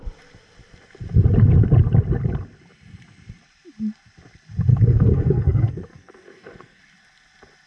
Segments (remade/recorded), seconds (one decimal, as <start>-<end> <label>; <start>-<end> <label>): 0.0-4.7 recorded; 4.7-6.8 remade; 6.8-7.7 recorded